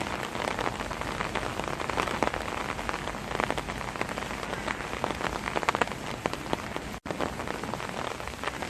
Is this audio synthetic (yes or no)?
no